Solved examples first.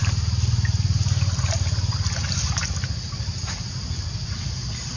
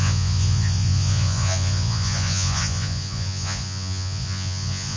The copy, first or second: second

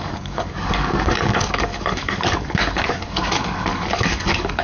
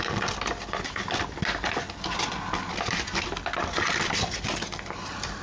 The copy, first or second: first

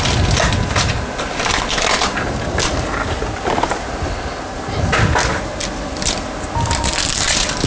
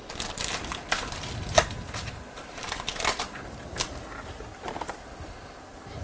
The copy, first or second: second